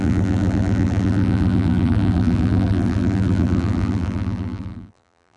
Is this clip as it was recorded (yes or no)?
no